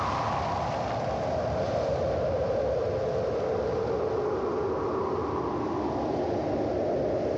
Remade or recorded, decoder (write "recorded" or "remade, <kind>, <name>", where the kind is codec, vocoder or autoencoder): recorded